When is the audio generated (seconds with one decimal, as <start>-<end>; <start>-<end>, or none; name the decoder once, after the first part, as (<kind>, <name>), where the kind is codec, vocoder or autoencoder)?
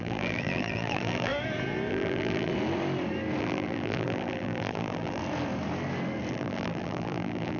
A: 0.0-1.3 (vocoder, BigVGAN v2); 1.9-2.5; 3.4-5.2; 6.3-7.6